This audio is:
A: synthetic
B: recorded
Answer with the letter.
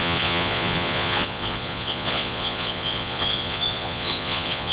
A